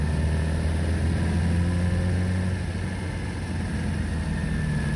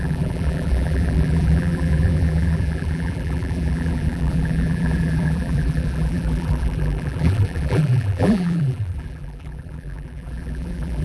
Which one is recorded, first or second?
first